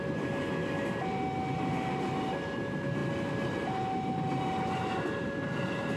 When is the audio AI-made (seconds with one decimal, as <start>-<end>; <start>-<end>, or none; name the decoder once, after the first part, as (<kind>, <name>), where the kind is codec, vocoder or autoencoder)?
none